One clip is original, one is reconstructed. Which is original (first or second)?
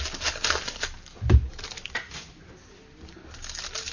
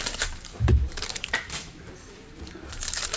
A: first